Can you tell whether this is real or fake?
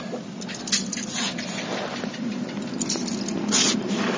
real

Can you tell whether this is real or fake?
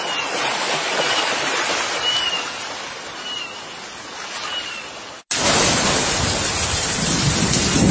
real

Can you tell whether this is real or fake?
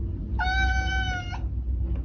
real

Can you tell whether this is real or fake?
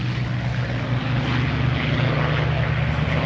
real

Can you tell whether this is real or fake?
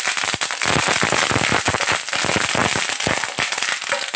real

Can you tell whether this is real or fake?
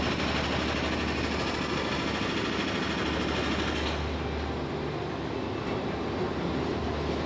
real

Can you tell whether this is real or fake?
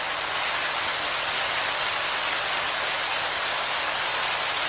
real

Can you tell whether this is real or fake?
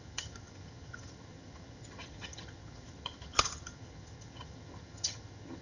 fake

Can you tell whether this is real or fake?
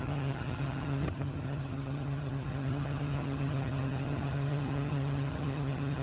fake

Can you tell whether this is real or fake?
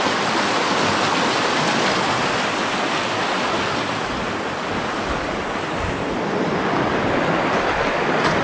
real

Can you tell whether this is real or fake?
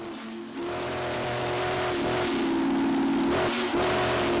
real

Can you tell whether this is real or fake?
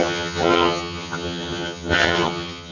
fake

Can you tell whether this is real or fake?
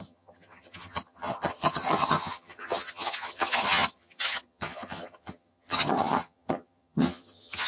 fake